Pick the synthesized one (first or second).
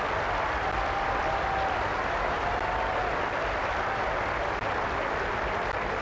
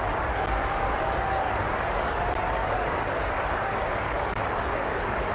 second